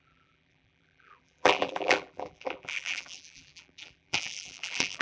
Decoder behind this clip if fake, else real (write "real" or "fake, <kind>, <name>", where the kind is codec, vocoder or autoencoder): fake, vocoder, BigVGAN v2